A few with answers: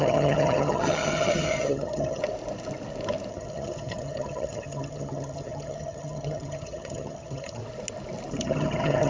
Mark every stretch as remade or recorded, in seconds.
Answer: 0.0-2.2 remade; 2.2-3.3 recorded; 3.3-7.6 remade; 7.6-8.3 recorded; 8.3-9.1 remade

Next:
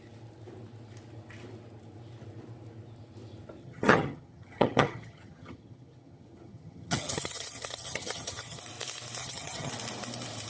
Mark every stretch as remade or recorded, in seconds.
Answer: 0.0-3.6 recorded; 3.6-8.6 remade; 8.6-9.2 recorded; 9.2-9.7 remade; 9.7-10.5 recorded

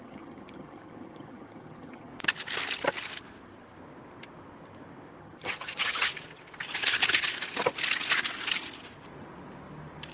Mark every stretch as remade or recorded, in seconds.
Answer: 0.0-2.1 remade; 2.1-5.2 recorded; 5.2-6.1 remade; 6.1-10.1 recorded

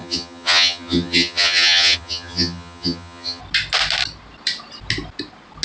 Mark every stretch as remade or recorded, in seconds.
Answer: 0.0-3.4 remade; 3.4-5.6 recorded